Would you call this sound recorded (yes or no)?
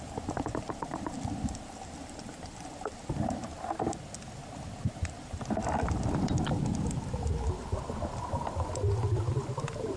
no